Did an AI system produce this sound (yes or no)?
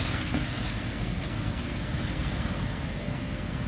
yes